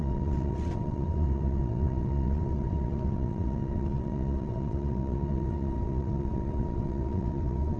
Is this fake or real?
fake